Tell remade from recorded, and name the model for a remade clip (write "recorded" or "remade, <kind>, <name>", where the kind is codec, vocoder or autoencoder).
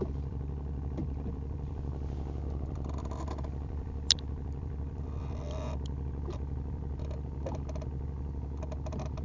remade, vocoder, BigVGAN v2